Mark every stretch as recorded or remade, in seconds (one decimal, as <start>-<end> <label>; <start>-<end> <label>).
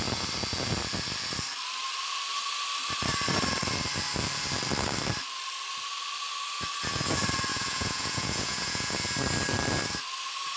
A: 0.0-7.5 recorded; 7.5-8.9 remade; 8.9-10.6 recorded